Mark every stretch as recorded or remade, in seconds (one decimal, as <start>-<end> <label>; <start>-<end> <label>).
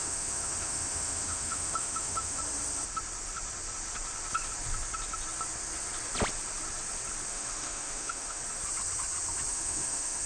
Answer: 0.0-2.4 remade; 2.4-7.3 recorded; 7.3-8.4 remade; 8.4-9.5 recorded; 9.5-10.3 remade